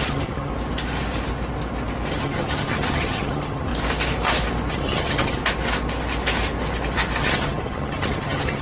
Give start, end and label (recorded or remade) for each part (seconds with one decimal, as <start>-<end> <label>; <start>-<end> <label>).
0.0-0.5 remade; 0.5-2.1 recorded; 2.1-3.7 remade; 3.7-4.7 recorded; 4.7-5.4 remade; 5.4-7.2 recorded; 7.2-8.6 remade